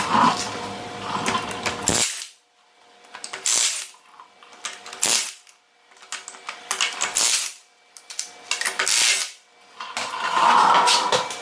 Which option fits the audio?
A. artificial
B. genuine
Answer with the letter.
B